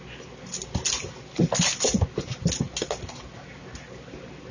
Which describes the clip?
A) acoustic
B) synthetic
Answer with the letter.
A